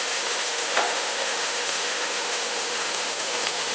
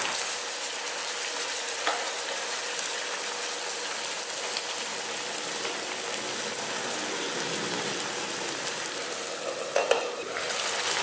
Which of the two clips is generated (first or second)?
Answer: first